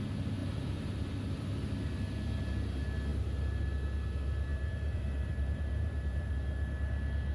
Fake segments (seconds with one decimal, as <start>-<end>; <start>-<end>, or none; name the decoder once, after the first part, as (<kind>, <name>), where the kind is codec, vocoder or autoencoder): 0.4-0.9 (vocoder, BigVGAN v2); 4.5-6.3